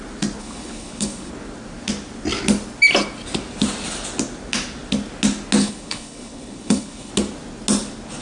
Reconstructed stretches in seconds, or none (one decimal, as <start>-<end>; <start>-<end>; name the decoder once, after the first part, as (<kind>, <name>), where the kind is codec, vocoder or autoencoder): 0.4-1.3 (codec, HILCodec); 5.6-7.1